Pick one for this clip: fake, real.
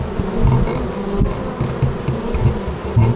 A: real